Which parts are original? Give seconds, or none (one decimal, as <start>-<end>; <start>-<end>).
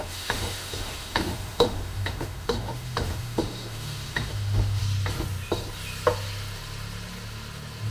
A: 4.8-7.9